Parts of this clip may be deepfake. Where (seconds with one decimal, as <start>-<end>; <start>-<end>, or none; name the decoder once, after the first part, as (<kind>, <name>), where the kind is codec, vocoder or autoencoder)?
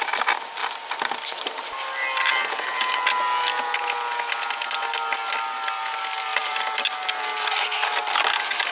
0.6-3.1 (vocoder, BigVGAN v2); 6.3-6.9